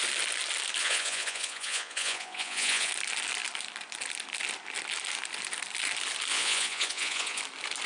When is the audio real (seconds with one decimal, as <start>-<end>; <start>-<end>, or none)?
0.0-0.8; 2.9-6.3; 7.4-7.9